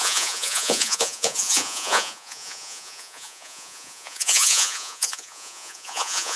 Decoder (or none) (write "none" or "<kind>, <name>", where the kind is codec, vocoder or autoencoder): vocoder, Vocos